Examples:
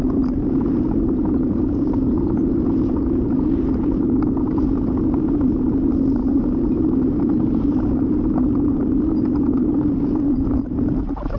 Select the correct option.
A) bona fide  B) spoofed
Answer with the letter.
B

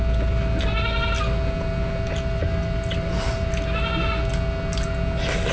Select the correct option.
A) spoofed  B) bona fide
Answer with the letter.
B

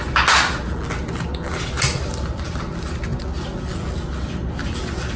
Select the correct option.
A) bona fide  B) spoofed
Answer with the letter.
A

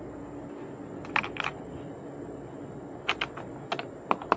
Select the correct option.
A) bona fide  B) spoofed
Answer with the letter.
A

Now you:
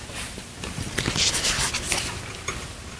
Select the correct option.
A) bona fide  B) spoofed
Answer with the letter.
A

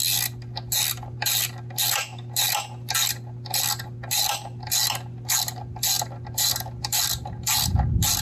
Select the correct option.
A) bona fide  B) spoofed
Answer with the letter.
A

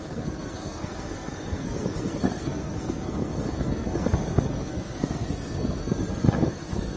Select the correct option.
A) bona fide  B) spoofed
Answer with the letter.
B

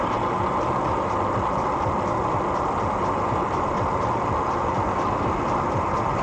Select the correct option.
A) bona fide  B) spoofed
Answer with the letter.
A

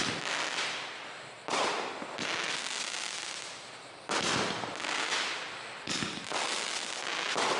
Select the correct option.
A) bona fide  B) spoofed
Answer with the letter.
A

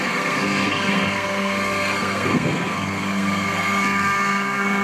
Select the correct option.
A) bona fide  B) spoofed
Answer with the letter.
B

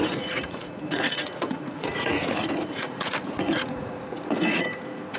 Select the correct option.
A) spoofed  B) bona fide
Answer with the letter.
A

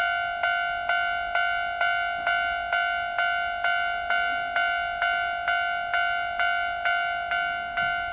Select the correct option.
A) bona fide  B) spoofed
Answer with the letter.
A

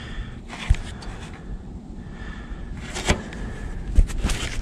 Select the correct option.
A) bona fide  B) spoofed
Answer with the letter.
A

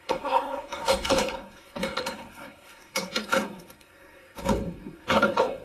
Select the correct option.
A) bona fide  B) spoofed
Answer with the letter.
B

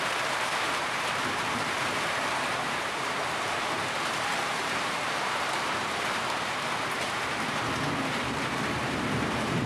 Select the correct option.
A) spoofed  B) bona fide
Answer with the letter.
A